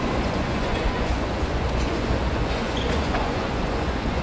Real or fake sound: fake